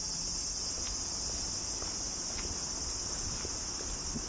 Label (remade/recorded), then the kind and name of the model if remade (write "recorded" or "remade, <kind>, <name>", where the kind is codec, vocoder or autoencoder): recorded